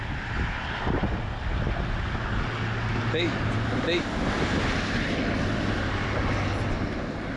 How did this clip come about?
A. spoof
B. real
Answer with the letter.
B